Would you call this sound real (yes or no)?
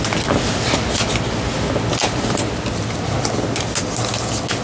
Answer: yes